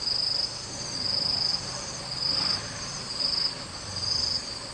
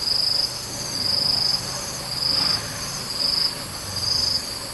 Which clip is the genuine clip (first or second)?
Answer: second